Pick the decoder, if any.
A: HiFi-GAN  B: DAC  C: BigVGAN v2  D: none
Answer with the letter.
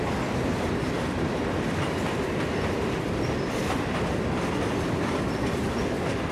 C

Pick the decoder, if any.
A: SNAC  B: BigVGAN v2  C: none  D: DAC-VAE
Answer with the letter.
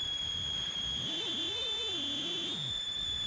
B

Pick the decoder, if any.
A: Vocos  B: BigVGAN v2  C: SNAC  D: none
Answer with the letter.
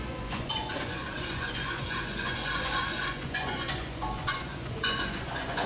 A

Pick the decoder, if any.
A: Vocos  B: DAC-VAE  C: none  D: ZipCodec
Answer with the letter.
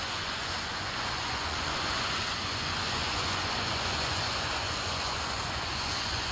A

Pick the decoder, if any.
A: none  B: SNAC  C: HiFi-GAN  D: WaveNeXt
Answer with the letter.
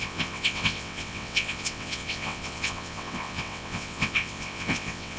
D